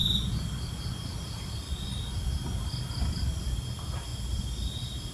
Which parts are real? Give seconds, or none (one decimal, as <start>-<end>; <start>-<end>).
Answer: 0.0-5.1